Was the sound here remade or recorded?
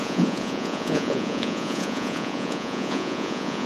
remade